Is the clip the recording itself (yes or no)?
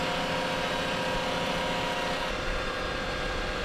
yes